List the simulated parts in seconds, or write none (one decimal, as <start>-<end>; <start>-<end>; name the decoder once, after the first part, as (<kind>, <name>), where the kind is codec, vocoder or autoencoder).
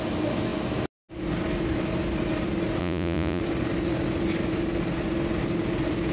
2.8-3.4 (vocoder, Vocos)